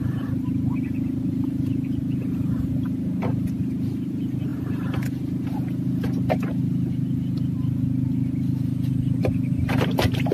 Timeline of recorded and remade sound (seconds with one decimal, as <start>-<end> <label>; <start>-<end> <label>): 0.0-10.3 recorded